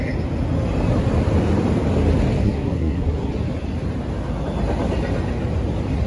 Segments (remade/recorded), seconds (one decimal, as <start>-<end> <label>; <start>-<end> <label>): 0.0-2.4 recorded; 2.4-3.3 remade; 3.3-6.1 recorded